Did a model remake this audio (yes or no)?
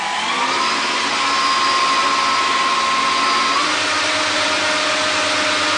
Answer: no